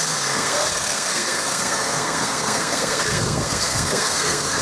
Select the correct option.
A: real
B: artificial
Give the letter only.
B